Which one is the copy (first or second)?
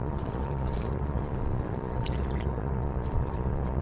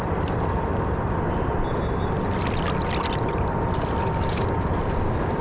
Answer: first